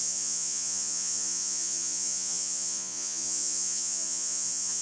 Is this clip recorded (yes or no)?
no